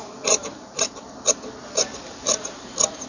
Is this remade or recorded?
remade